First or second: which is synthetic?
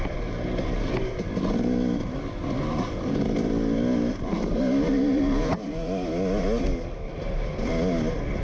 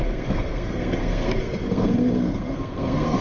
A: second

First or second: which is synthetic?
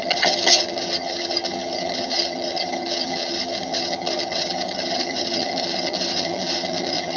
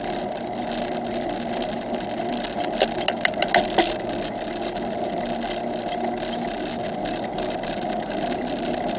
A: first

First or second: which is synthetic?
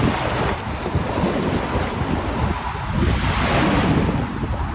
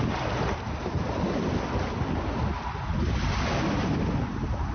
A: first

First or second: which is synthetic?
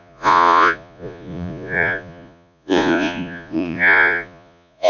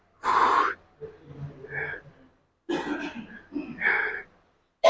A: first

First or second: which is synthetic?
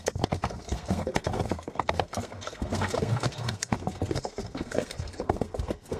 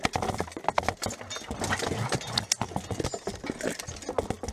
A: first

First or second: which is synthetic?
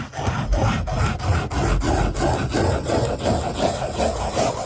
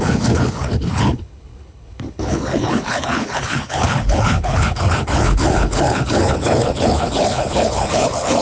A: second